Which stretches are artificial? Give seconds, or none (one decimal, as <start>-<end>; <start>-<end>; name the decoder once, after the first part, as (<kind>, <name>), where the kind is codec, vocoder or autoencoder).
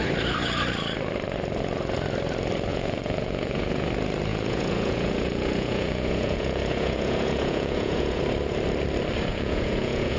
2.7-3.9 (vocoder, Vocos); 4.3-8.2; 9.3-10.2